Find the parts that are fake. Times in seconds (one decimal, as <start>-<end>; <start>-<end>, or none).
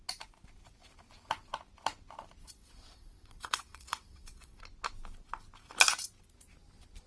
2.4-4.6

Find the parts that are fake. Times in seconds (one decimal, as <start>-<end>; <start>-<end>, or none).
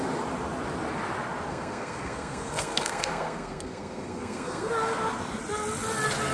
1.5-4.7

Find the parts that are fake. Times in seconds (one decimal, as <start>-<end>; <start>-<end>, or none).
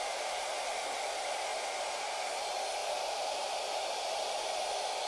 none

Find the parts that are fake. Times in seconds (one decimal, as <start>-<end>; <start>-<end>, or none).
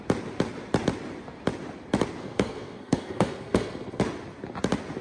2.2-4.0